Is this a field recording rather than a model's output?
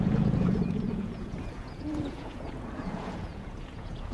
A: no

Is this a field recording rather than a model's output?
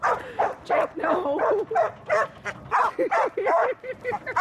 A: yes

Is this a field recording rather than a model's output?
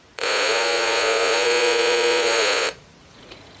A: no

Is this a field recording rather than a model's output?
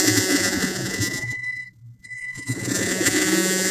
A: no